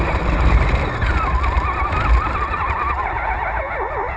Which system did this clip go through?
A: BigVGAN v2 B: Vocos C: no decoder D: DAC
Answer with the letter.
C